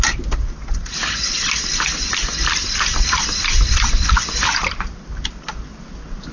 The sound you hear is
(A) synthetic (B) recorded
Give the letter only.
B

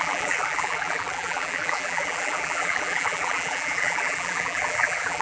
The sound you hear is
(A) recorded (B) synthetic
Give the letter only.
B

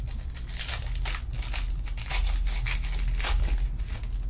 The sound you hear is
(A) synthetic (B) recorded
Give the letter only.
B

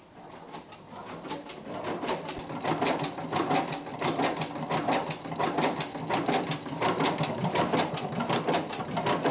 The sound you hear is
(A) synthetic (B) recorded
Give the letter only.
B